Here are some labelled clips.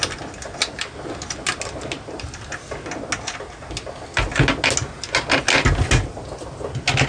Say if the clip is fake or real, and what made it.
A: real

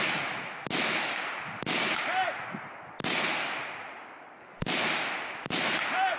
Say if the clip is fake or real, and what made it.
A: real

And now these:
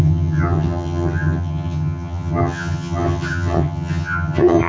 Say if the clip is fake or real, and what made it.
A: fake, vocoder, HiFi-GAN